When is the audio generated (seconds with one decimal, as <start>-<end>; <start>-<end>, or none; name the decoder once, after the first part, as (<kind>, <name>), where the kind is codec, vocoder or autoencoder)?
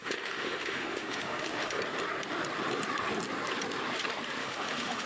0.0-1.8 (autoencoder, DAC-VAE); 4.4-5.1